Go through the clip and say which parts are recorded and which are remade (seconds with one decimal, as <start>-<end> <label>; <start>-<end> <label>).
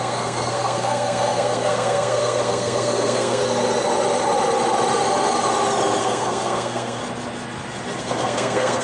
0.0-3.4 remade; 3.4-6.0 recorded; 6.0-7.0 remade; 7.0-8.0 recorded; 8.0-8.8 remade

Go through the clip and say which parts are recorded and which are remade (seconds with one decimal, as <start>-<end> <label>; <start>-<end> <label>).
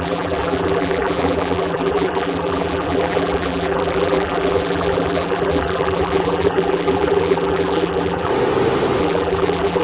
0.0-8.3 remade; 8.3-9.0 recorded; 9.0-9.8 remade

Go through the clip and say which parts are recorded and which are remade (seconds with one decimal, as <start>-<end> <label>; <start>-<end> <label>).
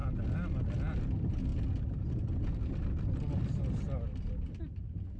0.0-5.2 recorded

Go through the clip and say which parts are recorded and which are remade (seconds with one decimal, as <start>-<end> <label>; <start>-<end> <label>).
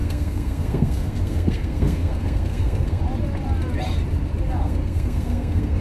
0.0-3.0 remade; 3.0-4.6 recorded; 4.6-5.8 remade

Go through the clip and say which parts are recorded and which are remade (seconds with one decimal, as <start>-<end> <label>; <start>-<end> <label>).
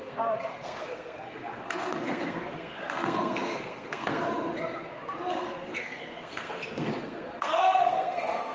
0.0-4.2 remade; 4.2-5.3 recorded; 5.3-8.5 remade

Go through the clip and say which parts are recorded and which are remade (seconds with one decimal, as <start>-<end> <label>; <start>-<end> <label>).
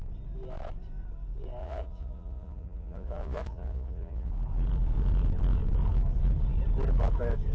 0.0-1.6 recorded; 1.6-4.3 remade; 4.3-7.5 recorded